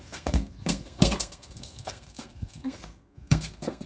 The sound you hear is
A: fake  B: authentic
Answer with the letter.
A